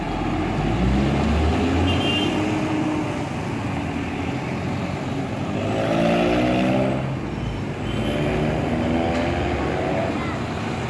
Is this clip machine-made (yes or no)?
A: no